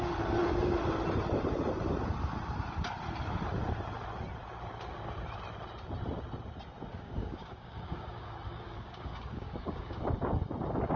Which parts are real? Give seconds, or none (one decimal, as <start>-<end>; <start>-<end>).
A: 0.0-6.9; 10.0-11.0

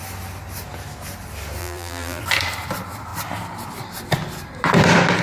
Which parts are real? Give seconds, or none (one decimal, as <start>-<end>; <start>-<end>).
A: 0.0-1.6; 2.2-5.2

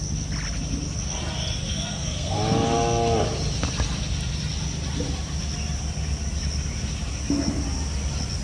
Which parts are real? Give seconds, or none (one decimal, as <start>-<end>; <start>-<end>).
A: 0.0-1.7; 2.4-8.4

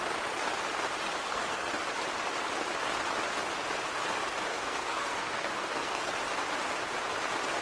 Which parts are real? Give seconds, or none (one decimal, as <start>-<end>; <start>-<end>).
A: 0.0-1.2; 1.7-4.5; 6.1-7.6

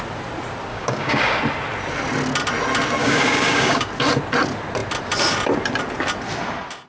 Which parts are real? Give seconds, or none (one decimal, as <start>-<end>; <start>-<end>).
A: 0.0-0.7; 1.4-3.0; 3.9-6.9